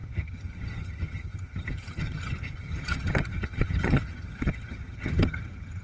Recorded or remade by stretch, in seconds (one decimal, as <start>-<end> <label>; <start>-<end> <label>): 0.0-5.8 remade